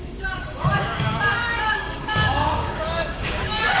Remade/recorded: remade